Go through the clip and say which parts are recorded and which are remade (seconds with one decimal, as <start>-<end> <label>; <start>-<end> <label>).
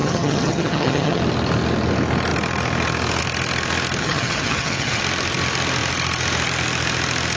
0.0-1.2 remade; 1.2-4.0 recorded; 4.0-5.0 remade; 5.0-7.4 recorded